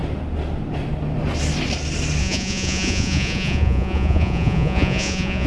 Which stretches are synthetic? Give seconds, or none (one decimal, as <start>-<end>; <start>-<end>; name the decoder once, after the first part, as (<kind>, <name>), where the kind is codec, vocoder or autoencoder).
2.2-5.5 (vocoder, Vocos)